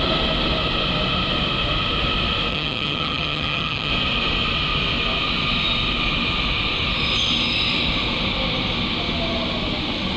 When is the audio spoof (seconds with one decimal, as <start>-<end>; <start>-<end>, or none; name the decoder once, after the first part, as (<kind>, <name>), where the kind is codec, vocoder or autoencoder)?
2.5-3.9 (vocoder, HiFi-GAN)